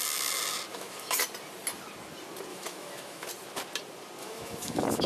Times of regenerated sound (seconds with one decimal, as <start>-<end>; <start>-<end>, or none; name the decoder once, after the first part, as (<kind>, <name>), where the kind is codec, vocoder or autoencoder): 0.7-1.2 (autoencoder, DAC-VAE); 2.5-3.3; 4.2-5.1